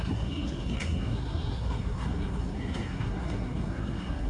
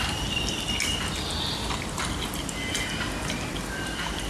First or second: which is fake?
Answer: first